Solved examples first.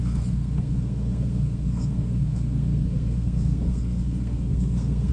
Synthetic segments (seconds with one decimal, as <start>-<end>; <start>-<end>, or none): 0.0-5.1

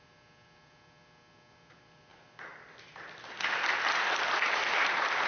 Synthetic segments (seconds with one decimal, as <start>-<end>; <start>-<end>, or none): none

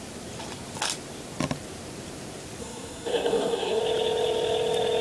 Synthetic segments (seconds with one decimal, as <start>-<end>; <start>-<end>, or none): 2.6-3.8

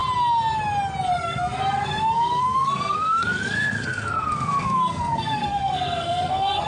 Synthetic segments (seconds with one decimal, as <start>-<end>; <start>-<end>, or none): 1.1-6.7

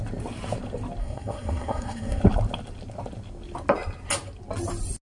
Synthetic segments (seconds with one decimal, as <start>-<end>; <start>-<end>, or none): 1.0-2.2

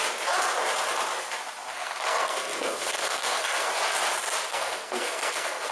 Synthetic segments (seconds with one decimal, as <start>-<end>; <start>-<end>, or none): 1.7-3.7; 4.5-5.7

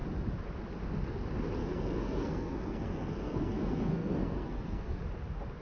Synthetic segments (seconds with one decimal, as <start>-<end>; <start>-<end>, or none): 1.6-5.0